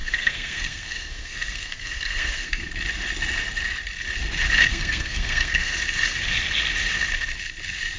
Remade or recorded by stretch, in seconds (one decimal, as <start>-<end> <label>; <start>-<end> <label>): 0.0-2.7 remade; 2.7-4.7 recorded; 4.7-5.7 remade; 5.7-8.0 recorded